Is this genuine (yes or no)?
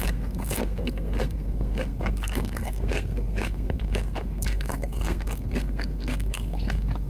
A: no